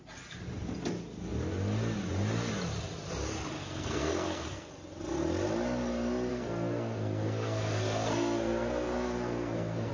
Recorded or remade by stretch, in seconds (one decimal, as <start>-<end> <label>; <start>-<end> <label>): 0.0-3.6 recorded; 3.6-4.7 remade; 4.7-6.3 recorded; 6.3-9.9 remade